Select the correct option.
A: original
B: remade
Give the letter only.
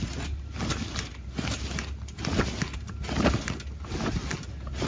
A